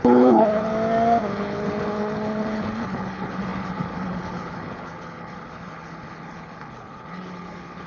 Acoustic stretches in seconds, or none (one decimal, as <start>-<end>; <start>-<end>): 0.7-1.3